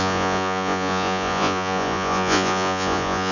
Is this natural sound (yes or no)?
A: no